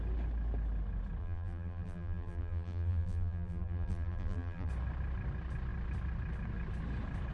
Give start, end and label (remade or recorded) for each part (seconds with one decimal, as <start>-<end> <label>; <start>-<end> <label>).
0.0-1.2 recorded; 1.2-4.7 remade; 4.7-7.3 recorded